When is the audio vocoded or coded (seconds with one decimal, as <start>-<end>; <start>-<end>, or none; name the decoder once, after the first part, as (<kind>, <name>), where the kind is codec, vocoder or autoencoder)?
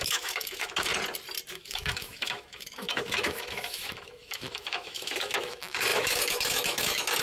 0.0-0.9 (autoencoder, DAC-VAE); 1.5-7.2